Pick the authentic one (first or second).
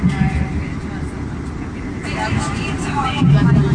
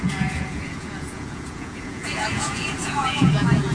first